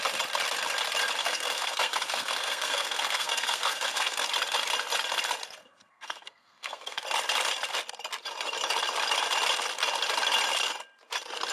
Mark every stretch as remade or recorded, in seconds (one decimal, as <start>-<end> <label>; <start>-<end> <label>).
0.0-1.2 recorded; 1.2-4.3 remade; 4.3-5.6 recorded; 5.6-7.0 remade; 7.0-11.5 recorded